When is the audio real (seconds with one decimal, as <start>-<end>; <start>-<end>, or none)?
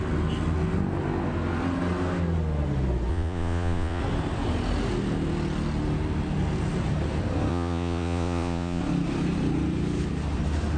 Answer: 0.0-3.1; 4.0-7.5; 8.8-10.8